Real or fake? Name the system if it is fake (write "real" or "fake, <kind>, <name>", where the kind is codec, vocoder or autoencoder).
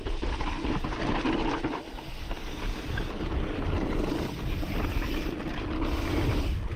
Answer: real